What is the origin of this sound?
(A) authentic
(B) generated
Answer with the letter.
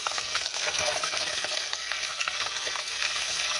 B